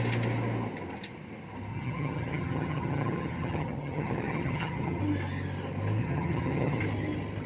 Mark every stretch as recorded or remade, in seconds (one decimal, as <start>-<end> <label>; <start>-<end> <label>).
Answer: 0.0-1.7 recorded; 1.7-5.0 remade; 5.0-6.0 recorded; 6.0-6.8 remade; 6.8-7.5 recorded